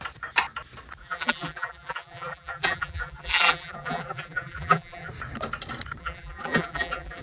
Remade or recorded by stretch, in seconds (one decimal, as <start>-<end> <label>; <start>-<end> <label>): 0.0-1.0 recorded; 1.0-5.1 remade; 5.1-6.0 recorded; 6.0-7.2 remade